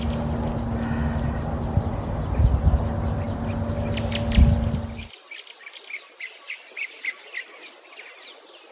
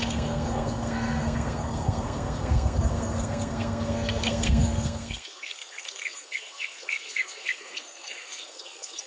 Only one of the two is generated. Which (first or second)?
second